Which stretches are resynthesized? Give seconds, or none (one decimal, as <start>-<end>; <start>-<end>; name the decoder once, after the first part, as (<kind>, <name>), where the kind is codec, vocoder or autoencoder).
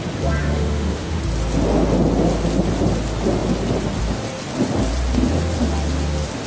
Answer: 0.4-1.2 (autoencoder, DAC-VAE)